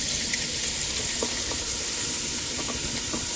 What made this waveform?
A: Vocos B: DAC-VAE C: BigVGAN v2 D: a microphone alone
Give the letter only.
D